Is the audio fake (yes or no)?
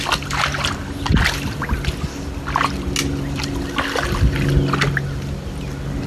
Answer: no